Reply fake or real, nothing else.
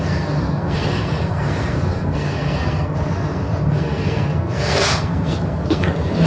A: fake